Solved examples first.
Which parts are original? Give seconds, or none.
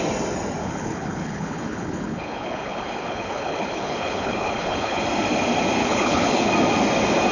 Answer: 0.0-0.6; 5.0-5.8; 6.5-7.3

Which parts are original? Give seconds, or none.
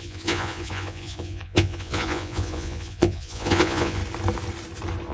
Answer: 4.0-5.1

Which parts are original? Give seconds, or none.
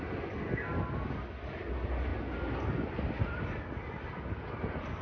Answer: 0.0-5.0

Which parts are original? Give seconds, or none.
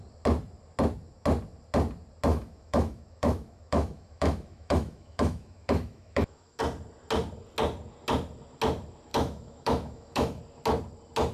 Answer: 0.0-2.3; 6.6-9.1; 10.4-11.3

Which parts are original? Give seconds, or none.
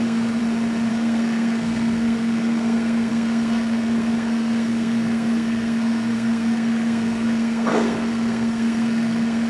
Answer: 0.4-0.9